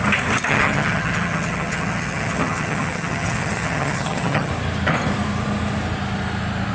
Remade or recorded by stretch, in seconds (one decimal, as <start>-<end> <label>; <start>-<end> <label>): 0.0-0.5 recorded; 0.5-4.5 remade; 4.5-6.7 recorded